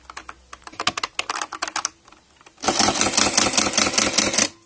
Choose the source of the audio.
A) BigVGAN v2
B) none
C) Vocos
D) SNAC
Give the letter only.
B